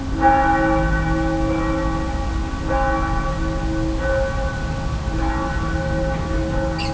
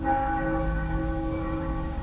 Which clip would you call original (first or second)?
first